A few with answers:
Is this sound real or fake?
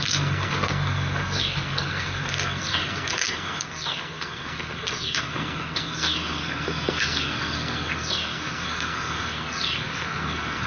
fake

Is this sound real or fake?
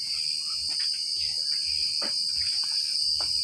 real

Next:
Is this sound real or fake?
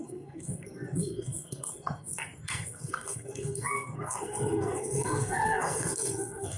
fake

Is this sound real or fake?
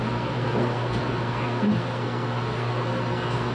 fake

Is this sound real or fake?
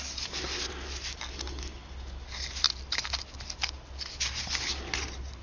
real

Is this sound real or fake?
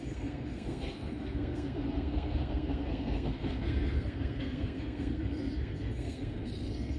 fake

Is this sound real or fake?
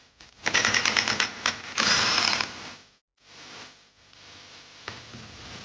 real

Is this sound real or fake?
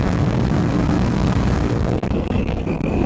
fake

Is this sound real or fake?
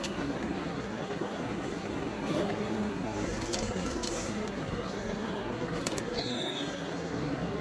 fake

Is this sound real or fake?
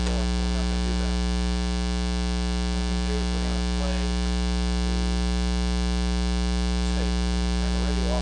real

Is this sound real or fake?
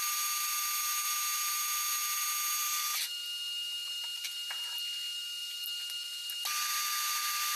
real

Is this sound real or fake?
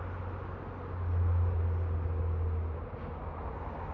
real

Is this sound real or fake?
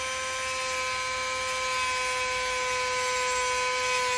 real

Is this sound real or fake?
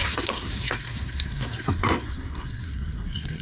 fake